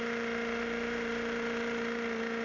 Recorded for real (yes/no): yes